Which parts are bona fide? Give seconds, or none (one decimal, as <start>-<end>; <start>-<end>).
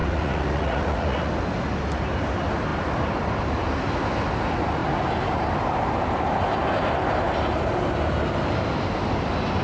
1.3-9.6